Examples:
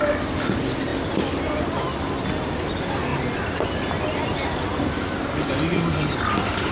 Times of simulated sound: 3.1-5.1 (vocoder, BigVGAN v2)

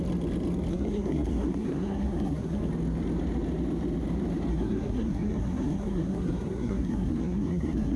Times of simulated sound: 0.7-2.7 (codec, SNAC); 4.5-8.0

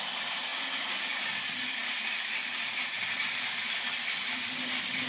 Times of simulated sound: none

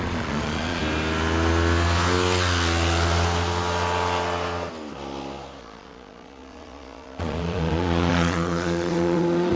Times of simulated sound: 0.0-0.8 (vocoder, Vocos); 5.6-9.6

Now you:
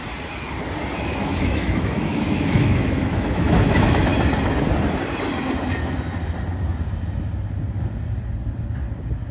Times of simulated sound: 1.0-4.1 (autoencoder, DAC-VAE)

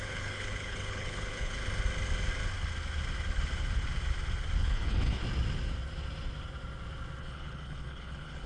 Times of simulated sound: 0.0-1.6 (codec, HILCodec); 4.6-5.2; 7.2-8.5

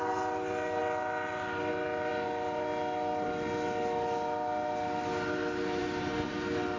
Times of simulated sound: none